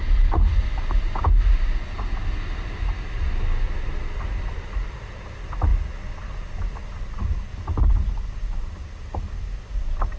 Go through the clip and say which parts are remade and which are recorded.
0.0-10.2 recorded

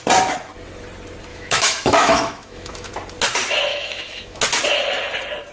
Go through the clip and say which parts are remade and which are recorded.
0.0-1.3 recorded; 1.3-2.9 remade; 2.9-3.7 recorded; 3.7-4.4 remade; 4.4-5.5 recorded

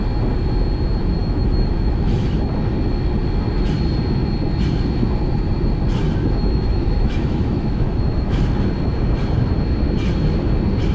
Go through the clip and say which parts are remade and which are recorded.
0.0-1.2 recorded; 1.2-2.3 remade; 2.3-6.4 recorded; 6.4-8.4 remade; 8.4-10.9 recorded